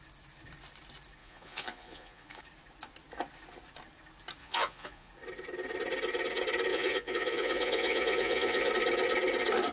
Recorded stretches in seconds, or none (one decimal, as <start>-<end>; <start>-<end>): 0.0-1.2; 2.4-4.4; 5.1-6.7; 8.7-9.7

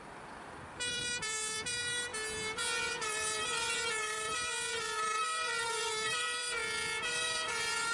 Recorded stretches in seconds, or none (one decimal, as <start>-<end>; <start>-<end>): 2.1-2.8; 6.6-7.1